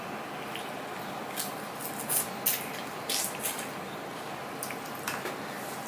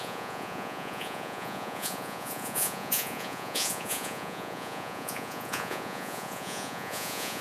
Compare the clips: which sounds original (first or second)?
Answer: first